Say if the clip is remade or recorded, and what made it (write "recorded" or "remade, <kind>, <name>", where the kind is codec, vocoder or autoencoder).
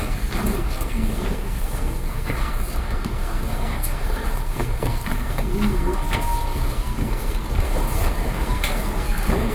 remade, codec, SNAC